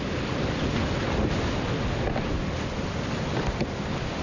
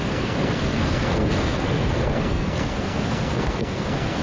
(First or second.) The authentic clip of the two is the first